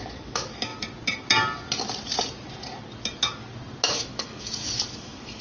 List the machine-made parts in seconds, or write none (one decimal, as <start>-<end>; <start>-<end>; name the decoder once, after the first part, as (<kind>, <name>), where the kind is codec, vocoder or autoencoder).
0.0-0.7 (autoencoder, DAC-VAE); 3.9-5.4